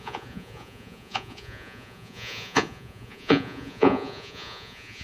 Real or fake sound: fake